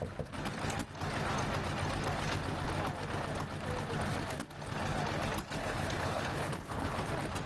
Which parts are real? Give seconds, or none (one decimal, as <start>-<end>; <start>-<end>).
0.0-5.6; 7.1-7.5